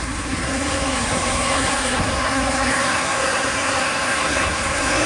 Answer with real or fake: fake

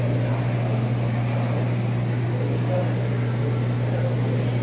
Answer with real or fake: real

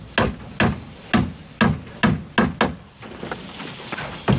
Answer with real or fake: real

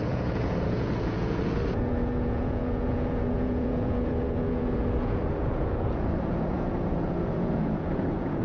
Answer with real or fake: fake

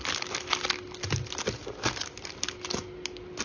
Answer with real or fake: real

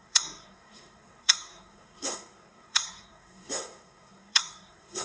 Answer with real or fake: fake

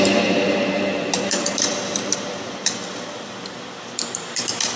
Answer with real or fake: fake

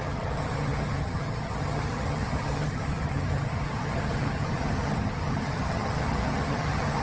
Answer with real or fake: fake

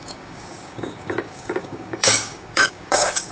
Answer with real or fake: fake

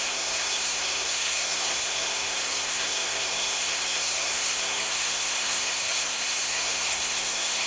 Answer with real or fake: fake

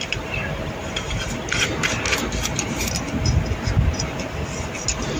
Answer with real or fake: real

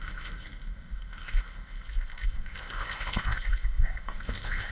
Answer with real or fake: fake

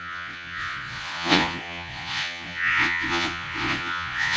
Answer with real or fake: fake